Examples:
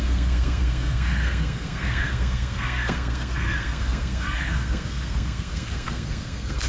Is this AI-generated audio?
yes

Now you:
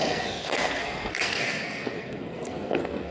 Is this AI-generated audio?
yes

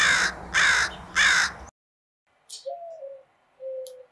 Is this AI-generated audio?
no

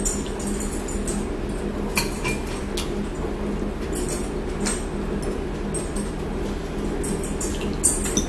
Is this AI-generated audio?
no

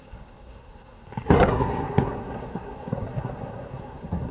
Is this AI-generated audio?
yes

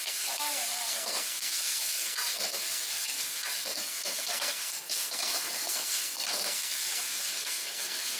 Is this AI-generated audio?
yes